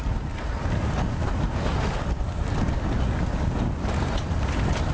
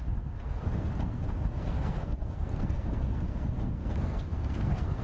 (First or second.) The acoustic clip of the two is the first